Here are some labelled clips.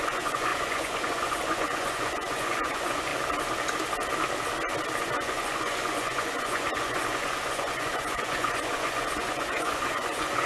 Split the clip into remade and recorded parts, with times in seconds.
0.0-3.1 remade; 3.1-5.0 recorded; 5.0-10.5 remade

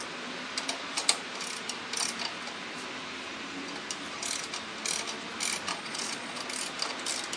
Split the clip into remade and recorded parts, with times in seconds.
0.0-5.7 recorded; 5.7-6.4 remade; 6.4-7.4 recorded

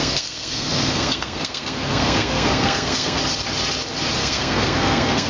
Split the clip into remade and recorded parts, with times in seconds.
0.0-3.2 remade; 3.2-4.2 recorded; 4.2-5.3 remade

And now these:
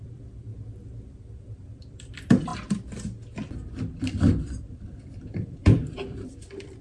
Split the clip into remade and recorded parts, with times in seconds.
0.0-0.5 remade; 0.5-1.1 recorded; 1.1-2.5 remade; 2.5-4.0 recorded; 4.0-6.8 remade

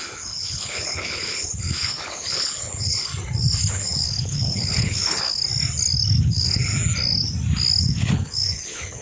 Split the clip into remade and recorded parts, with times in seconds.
0.0-3.1 remade; 3.1-3.7 recorded; 3.7-5.4 remade; 5.4-6.2 recorded; 6.2-6.7 remade; 6.7-7.8 recorded; 7.8-9.0 remade

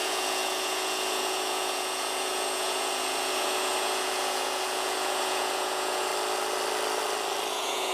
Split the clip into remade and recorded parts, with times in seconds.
0.0-6.1 remade; 6.1-7.5 recorded; 7.5-7.9 remade